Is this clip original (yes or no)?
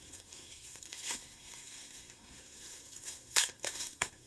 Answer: no